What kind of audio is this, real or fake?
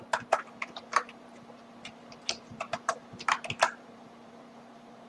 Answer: fake